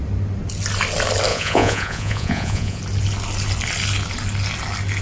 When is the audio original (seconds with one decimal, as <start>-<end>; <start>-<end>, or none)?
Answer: 0.0-1.3; 2.8-5.0